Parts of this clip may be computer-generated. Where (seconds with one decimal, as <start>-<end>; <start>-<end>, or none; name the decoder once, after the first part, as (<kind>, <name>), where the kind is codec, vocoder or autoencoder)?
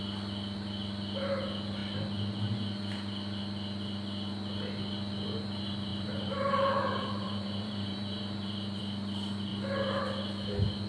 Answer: 5.9-8.8 (vocoder, BigVGAN v2)